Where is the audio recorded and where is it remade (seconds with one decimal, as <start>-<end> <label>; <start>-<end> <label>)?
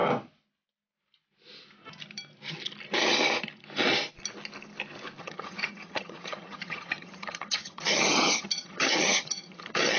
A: 0.0-5.2 recorded; 5.2-10.0 remade